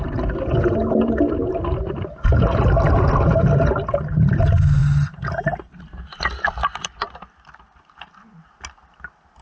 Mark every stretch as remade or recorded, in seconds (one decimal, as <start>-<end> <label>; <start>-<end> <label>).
0.0-9.4 recorded